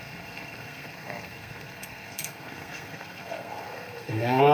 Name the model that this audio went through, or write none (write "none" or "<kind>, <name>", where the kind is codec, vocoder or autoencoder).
codec, SNAC